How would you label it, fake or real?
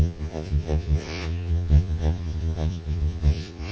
fake